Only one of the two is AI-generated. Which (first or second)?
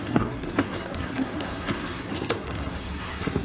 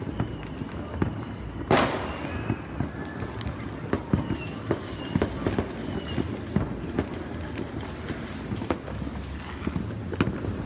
first